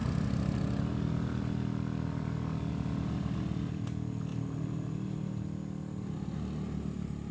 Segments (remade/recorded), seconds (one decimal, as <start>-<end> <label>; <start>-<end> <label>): 0.0-7.3 recorded